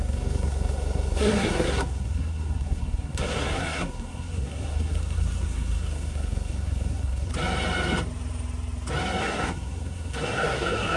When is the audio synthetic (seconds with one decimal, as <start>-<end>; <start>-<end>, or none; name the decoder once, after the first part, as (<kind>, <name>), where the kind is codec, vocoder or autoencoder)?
0.0-7.3 (codec, SNAC); 9.2-11.0